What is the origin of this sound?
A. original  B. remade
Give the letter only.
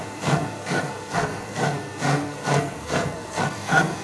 B